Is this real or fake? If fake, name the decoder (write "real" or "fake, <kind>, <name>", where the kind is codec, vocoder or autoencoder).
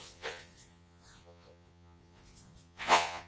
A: fake, vocoder, Vocos